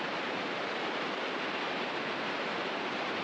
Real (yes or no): no